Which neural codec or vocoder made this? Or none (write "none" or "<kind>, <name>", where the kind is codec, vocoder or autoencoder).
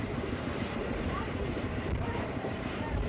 vocoder, BigVGAN v2